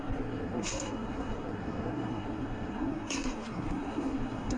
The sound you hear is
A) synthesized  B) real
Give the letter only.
A